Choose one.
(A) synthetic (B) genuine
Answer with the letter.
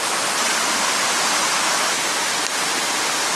B